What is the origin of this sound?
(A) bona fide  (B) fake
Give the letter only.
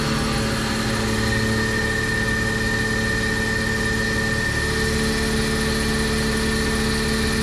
A